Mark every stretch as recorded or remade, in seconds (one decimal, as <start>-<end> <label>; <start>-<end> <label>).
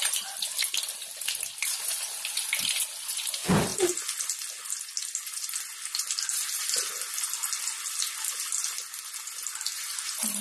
0.0-10.4 recorded